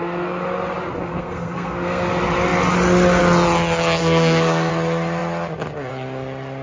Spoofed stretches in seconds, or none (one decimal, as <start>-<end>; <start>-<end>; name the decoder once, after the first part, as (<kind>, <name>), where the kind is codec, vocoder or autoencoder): 1.1-2.1 (codec, SNAC); 4.0-4.7